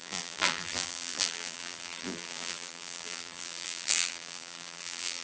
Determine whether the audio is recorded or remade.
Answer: remade